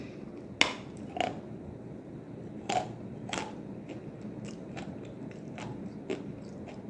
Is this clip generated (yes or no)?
no